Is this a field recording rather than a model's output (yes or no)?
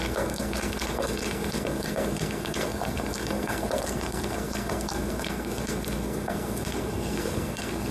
no